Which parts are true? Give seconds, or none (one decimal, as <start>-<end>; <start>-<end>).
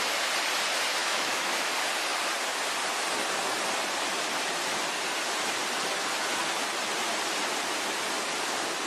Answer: 0.0-1.0; 1.7-8.9